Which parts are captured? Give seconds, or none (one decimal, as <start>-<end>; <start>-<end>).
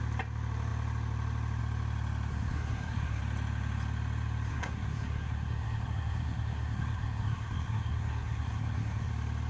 0.0-2.3; 3.2-4.5; 9.1-9.5